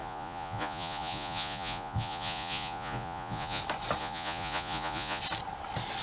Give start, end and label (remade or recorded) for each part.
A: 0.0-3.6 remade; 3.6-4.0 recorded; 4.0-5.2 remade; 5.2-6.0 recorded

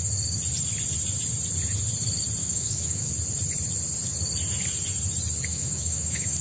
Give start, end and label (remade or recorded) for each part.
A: 0.0-2.4 recorded; 2.4-3.1 remade; 3.1-5.5 recorded; 5.5-6.4 remade

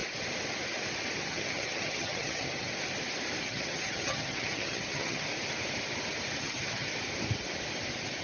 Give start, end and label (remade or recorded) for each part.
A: 0.0-1.1 recorded; 1.1-2.7 remade; 2.7-3.4 recorded; 3.4-5.3 remade; 5.3-6.4 recorded; 6.4-6.9 remade; 6.9-8.2 recorded

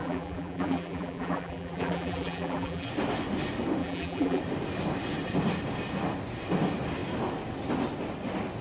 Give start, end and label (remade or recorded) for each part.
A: 0.0-2.9 remade; 2.9-3.8 recorded; 3.8-4.4 remade; 4.4-8.6 recorded